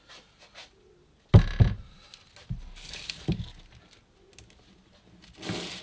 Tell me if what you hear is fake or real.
real